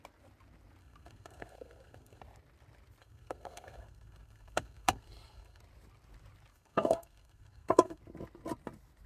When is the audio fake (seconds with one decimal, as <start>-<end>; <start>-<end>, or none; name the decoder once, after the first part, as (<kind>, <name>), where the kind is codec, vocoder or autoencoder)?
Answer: 0.8-2.2 (codec, SNAC); 3.0-5.6; 6.5-8.0